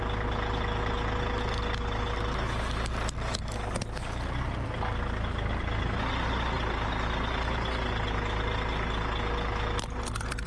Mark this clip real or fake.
real